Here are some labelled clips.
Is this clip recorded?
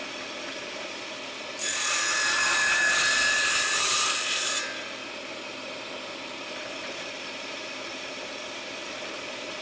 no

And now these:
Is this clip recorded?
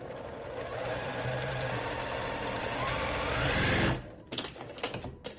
no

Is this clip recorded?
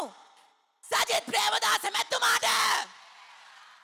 yes